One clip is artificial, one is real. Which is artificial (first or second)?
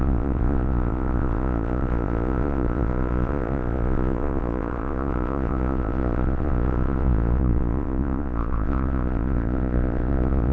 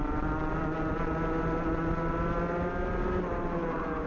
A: first